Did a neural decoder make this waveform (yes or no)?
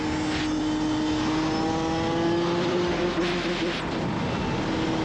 no